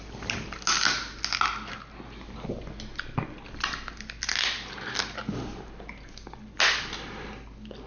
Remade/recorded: recorded